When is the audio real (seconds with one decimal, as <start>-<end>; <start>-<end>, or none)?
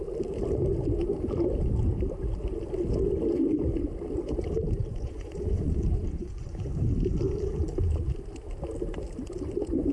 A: 0.0-4.9; 6.7-9.9